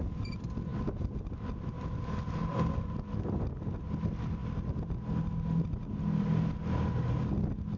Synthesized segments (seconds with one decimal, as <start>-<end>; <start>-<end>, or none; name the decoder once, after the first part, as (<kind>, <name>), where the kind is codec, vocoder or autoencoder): none